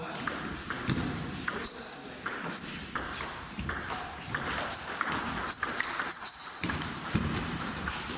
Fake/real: fake